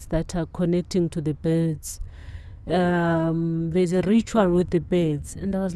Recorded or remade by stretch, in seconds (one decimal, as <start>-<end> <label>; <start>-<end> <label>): 0.0-1.4 recorded; 1.4-5.8 remade